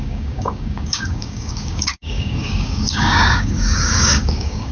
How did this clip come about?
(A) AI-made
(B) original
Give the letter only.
A